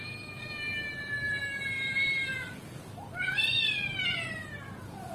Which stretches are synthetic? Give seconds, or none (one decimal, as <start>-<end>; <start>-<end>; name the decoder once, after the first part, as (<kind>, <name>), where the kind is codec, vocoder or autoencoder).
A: 0.0-5.1 (vocoder, BigVGAN v2)